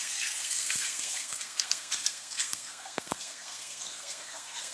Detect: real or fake fake